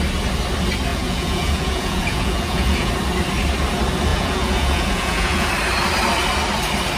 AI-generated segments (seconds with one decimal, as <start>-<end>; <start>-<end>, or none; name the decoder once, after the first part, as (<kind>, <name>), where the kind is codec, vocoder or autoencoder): 0.9-2.9 (vocoder, Vocos); 4.1-5.5

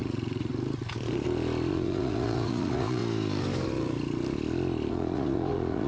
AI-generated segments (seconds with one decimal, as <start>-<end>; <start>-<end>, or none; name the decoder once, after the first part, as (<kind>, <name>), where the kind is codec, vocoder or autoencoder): 0.0-0.5 (vocoder, Vocos); 1.7-3.0; 4.9-5.9

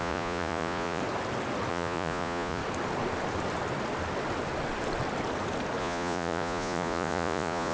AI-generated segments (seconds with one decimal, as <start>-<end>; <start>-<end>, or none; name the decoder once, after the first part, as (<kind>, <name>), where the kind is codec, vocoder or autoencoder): 0.0-1.0 (vocoder, Vocos); 1.7-2.6; 5.8-7.7